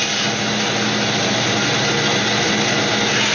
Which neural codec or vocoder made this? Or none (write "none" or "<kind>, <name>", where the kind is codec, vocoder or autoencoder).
none